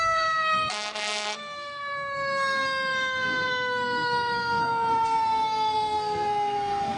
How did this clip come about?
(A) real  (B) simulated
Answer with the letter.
B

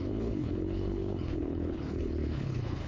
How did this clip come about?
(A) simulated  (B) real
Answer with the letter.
A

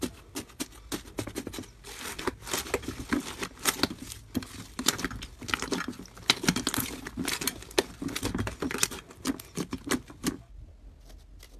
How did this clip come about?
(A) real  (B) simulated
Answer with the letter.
A